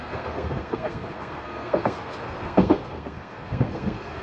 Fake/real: fake